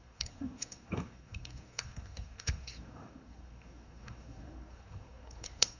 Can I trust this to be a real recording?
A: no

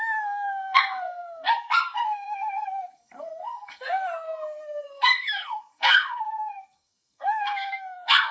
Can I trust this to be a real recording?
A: no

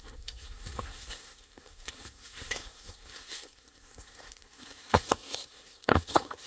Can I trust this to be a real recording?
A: no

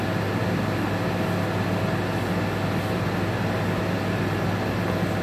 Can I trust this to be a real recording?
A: yes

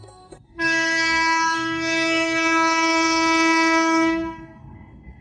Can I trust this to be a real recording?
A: no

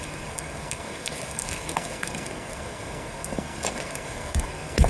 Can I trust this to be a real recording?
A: no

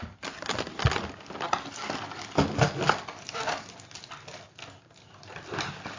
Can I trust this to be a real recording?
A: yes